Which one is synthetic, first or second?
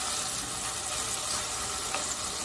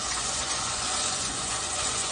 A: second